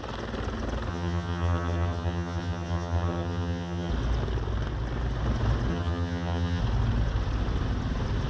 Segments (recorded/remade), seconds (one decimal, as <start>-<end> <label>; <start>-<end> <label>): 0.0-0.9 recorded; 0.9-3.9 remade; 3.9-5.7 recorded; 5.7-6.6 remade; 6.6-8.3 recorded